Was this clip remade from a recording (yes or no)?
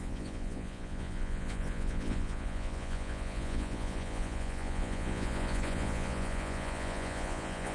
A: yes